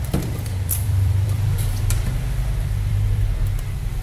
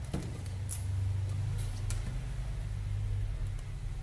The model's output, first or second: first